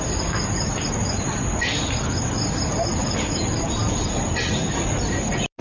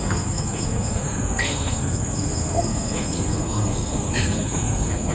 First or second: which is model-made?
second